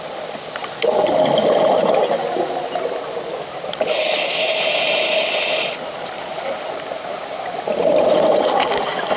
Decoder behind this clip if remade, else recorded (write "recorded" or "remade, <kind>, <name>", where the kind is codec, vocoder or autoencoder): recorded